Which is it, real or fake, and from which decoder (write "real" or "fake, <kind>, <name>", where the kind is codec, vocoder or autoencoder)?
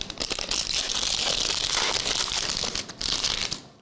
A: real